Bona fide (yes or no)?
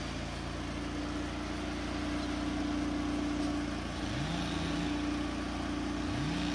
yes